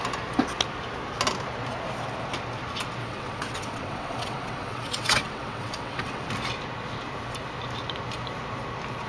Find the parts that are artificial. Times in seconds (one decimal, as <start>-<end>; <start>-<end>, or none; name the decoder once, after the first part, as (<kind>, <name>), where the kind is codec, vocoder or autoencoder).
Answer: 3.0-6.3 (vocoder, WaveNeXt)